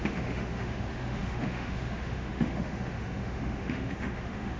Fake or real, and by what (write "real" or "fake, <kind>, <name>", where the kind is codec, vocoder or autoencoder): fake, autoencoder, DAC-VAE